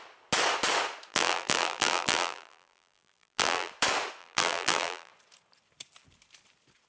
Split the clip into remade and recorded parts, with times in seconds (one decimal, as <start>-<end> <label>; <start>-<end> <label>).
0.0-1.1 recorded; 1.1-3.7 remade; 3.7-4.2 recorded; 4.2-5.1 remade; 5.1-6.9 recorded